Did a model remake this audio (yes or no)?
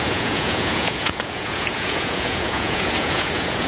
yes